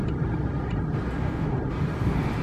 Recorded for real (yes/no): no